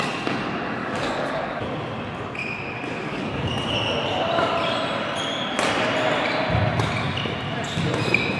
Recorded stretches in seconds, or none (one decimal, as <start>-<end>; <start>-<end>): 0.0-0.8; 1.6-3.0; 3.5-8.4